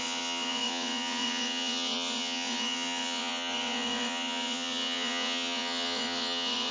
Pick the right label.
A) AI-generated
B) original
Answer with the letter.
A